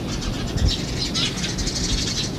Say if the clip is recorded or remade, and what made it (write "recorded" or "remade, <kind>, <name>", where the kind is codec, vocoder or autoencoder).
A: recorded